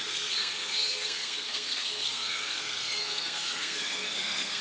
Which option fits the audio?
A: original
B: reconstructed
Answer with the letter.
B